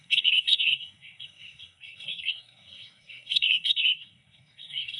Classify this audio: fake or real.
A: fake